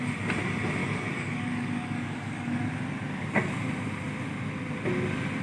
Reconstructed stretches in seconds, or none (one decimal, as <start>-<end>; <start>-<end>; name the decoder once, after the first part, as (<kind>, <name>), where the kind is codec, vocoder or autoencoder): 0.8-2.6 (codec, DAC)